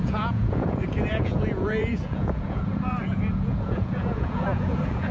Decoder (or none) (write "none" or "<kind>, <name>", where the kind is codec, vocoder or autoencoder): vocoder, Vocos